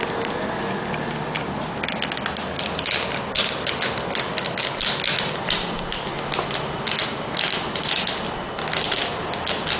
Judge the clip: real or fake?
real